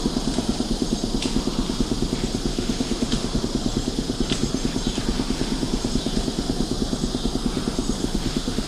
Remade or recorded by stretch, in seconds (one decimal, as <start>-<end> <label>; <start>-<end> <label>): 0.0-2.5 recorded; 2.5-3.4 remade; 3.4-8.0 recorded; 8.0-8.7 remade